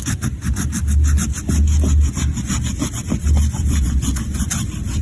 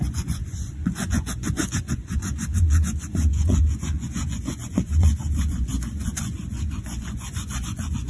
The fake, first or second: second